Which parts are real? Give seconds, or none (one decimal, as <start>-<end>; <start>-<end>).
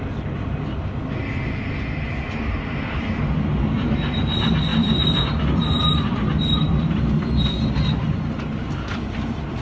0.0-4.7; 6.8-8.9